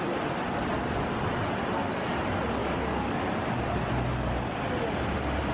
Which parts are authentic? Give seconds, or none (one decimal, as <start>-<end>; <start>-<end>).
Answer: 0.0-2.6; 3.2-5.5